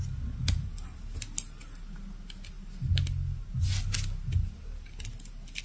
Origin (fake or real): real